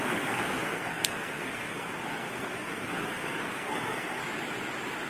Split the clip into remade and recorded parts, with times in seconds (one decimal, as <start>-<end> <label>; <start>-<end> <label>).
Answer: 0.0-4.2 remade; 4.2-5.1 recorded